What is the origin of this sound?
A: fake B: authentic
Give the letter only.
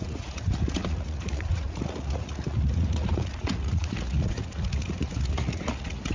A